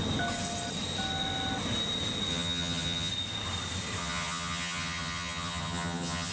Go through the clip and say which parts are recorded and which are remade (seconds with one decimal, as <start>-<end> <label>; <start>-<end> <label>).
0.0-2.3 recorded; 2.3-3.1 remade; 3.1-4.0 recorded; 4.0-6.3 remade